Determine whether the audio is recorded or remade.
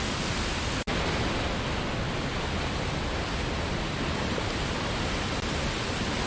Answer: recorded